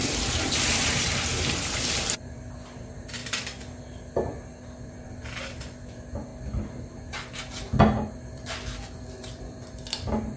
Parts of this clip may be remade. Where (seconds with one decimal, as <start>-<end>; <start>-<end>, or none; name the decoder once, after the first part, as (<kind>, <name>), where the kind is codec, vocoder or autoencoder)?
0.0-3.2 (vocoder, BigVGAN v2); 5.4-6.3; 8.1-10.4